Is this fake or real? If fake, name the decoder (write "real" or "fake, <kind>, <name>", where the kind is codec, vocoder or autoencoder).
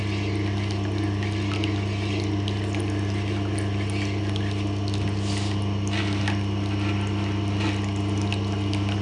real